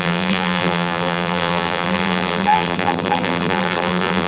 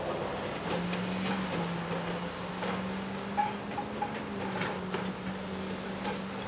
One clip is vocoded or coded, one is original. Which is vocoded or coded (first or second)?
first